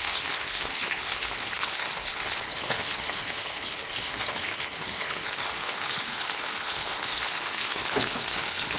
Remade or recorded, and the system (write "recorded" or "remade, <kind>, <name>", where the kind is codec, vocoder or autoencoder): remade, codec, HILCodec